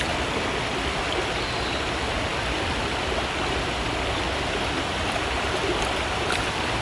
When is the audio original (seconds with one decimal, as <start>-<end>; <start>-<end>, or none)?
0.0-6.8